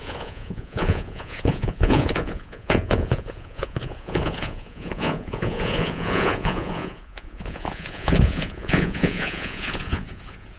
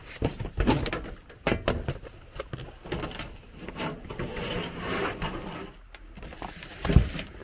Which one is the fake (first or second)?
first